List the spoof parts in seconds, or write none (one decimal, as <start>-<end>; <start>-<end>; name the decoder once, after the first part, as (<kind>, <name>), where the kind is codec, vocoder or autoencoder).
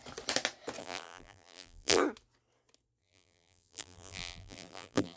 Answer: 0.8-2.0 (vocoder, BigVGAN v2); 3.0-5.2